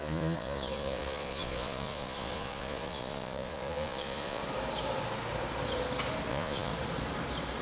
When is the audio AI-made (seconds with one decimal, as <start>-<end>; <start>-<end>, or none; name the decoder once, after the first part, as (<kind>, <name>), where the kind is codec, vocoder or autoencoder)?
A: 0.0-4.4 (vocoder, Vocos); 6.3-6.7